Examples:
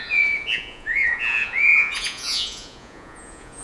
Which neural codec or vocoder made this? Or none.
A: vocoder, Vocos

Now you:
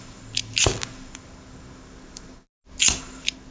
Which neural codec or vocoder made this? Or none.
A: none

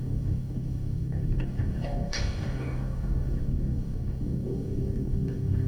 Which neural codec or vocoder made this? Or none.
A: codec, DAC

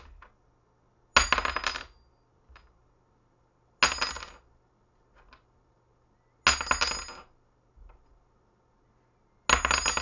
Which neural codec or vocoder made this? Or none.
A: none